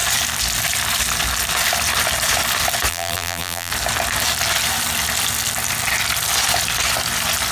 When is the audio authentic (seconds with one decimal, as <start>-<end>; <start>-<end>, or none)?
0.0-2.9; 3.7-7.5